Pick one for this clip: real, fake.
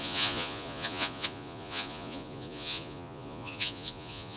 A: fake